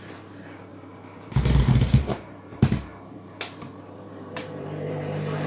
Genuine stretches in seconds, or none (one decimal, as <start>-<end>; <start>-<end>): none